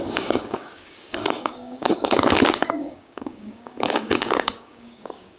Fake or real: fake